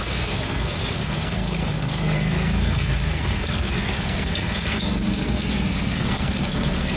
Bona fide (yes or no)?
no